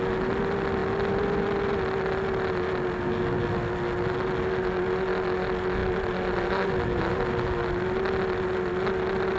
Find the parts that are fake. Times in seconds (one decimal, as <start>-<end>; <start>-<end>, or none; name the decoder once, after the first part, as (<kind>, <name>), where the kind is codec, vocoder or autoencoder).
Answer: none